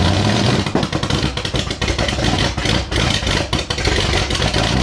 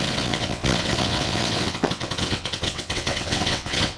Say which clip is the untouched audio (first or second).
first